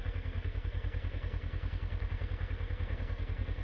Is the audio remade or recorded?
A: remade